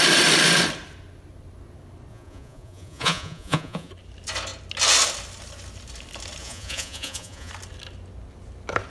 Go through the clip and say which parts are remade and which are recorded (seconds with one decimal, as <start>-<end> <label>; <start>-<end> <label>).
0.0-2.1 recorded; 2.1-3.9 remade; 3.9-6.4 recorded; 6.4-7.5 remade; 7.5-8.9 recorded

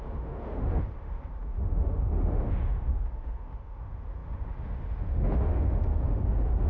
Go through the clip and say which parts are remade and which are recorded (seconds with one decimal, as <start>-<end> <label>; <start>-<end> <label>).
0.0-6.7 remade